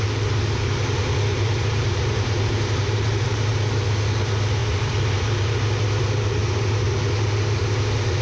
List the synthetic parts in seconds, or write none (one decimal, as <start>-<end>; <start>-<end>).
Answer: 1.3-3.5; 4.6-5.5